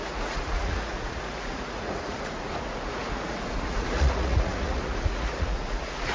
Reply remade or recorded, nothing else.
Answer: remade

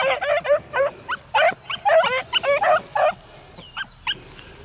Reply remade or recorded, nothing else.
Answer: recorded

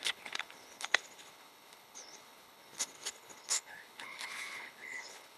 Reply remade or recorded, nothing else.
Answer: remade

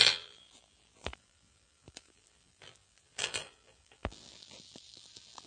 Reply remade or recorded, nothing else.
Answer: remade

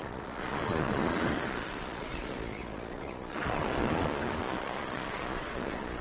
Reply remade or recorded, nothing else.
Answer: remade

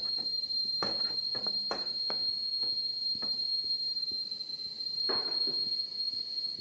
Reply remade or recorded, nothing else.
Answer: recorded